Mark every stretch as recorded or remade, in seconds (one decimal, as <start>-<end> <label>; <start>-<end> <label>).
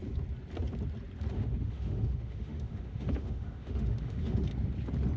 0.0-1.3 recorded; 1.3-4.4 remade; 4.4-5.2 recorded